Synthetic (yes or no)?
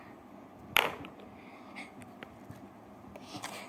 no